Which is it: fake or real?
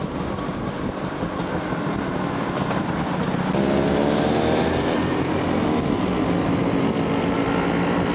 real